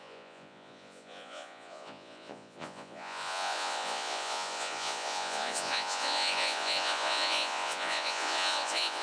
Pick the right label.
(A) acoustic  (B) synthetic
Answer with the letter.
B